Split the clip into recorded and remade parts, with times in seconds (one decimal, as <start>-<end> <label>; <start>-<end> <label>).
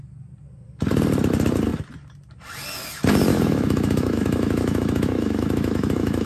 0.0-3.3 recorded; 3.3-6.3 remade